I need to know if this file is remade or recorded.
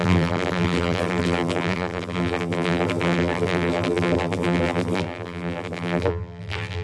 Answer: remade